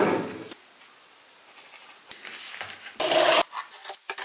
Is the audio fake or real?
real